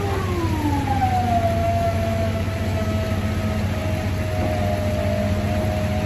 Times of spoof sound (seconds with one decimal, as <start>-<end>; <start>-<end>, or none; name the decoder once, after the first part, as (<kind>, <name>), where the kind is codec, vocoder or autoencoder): 1.6-3.1 (autoencoder, DAC-VAE)

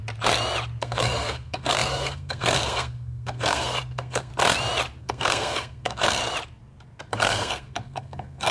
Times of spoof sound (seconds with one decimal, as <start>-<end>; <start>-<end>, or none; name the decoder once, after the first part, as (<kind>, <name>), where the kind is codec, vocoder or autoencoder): 0.8-4.3 (codec, SNAC); 5.0-6.2; 7.1-8.5

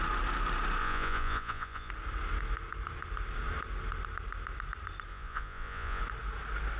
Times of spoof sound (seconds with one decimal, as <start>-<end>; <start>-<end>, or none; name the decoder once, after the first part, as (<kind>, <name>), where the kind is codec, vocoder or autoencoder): 0.8-1.9 (vocoder, Vocos); 5.1-6.0